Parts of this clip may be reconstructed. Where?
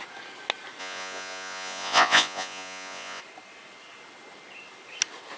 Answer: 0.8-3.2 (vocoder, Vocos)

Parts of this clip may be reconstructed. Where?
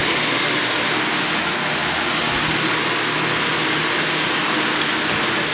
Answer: none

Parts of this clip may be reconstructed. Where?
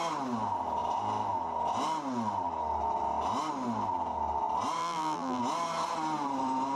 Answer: 4.8-5.4 (vocoder, BigVGAN v2)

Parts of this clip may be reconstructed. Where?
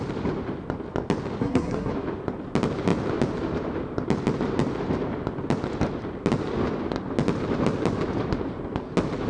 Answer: 1.4-1.9 (codec, SNAC)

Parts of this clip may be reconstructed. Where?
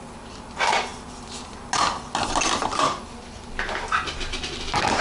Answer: none